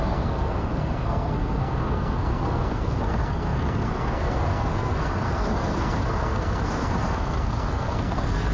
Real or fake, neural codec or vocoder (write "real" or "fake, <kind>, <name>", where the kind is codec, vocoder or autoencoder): fake, codec, SNAC